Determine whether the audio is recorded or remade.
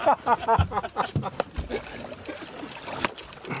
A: recorded